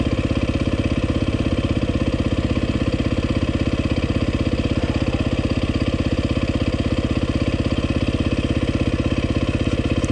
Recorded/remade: recorded